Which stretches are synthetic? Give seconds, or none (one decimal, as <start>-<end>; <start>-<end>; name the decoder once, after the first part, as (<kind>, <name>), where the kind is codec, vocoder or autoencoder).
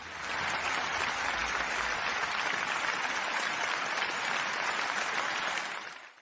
none